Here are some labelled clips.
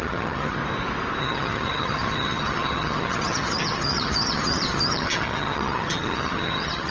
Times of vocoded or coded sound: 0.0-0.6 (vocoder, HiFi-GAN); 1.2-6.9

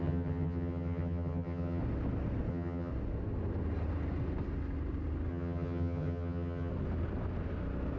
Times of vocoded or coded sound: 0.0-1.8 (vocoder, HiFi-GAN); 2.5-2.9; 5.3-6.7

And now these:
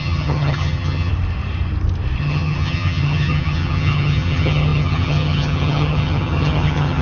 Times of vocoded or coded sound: 0.0-1.1 (vocoder, HiFi-GAN); 2.2-7.0

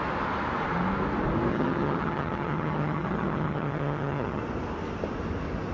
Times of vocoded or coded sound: 1.5-4.4 (vocoder, HiFi-GAN)

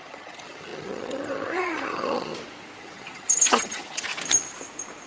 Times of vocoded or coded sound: 0.0-2.3 (vocoder, HiFi-GAN); 2.8-4.1

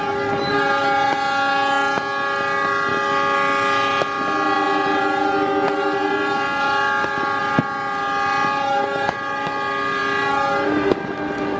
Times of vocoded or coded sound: none